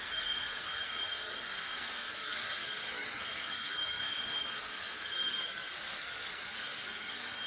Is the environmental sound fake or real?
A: fake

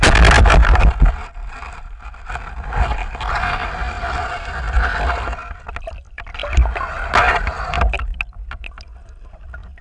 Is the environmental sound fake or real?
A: real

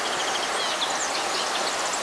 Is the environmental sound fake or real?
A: real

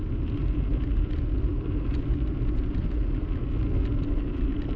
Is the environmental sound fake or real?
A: real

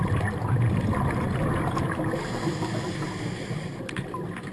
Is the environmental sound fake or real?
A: real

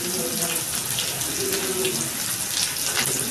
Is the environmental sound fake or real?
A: real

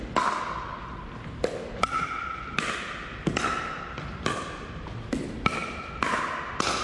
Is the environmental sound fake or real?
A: real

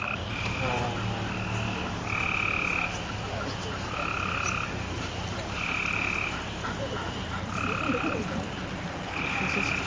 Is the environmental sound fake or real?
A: real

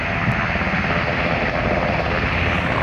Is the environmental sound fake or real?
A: real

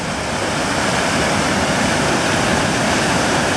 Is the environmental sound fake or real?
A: real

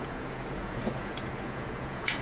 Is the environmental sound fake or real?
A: fake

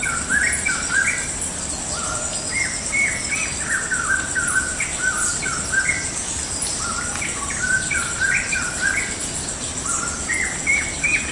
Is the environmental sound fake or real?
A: real